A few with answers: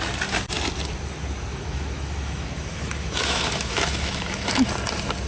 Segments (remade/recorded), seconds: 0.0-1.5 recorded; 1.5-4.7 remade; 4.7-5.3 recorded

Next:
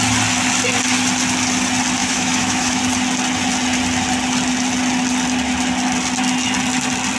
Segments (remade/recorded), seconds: 0.0-2.0 recorded; 2.0-2.8 remade; 2.8-7.2 recorded

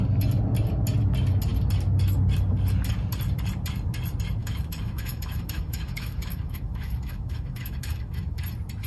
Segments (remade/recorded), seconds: 0.0-4.4 recorded; 4.4-8.4 remade; 8.4-8.9 recorded

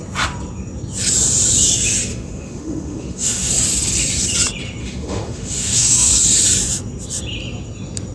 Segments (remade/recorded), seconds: 0.0-2.1 recorded; 2.1-3.5 remade; 3.5-4.8 recorded; 4.8-6.1 remade; 6.1-8.1 recorded